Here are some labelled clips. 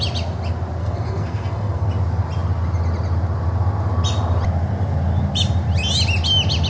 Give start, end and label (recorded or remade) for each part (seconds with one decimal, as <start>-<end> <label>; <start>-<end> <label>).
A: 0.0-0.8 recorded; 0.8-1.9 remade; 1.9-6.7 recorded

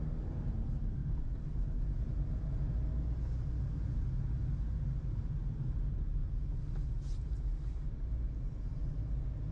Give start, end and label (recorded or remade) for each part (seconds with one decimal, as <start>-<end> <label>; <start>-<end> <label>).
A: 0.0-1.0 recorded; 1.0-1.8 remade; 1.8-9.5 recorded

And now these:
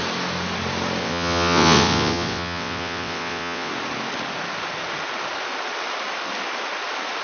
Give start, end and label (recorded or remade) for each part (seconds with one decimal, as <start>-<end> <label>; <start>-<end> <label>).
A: 0.0-1.0 recorded; 1.0-3.7 remade; 3.7-7.2 recorded

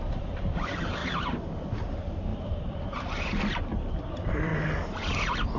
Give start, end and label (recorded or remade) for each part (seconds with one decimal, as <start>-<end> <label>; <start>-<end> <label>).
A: 0.0-2.3 remade; 2.3-3.9 recorded; 3.9-5.6 remade

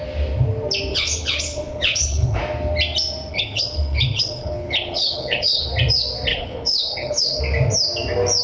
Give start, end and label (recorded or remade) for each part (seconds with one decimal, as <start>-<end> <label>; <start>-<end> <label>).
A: 0.0-0.9 recorded; 0.9-2.4 remade; 2.4-3.3 recorded; 3.3-5.7 remade; 5.7-6.3 recorded; 6.3-7.4 remade; 7.4-8.4 recorded